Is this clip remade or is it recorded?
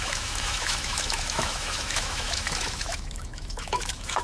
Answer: remade